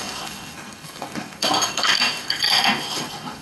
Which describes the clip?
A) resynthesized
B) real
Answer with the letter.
A